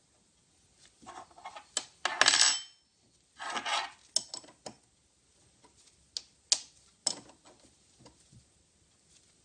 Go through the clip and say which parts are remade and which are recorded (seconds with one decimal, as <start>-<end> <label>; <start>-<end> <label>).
0.0-9.4 recorded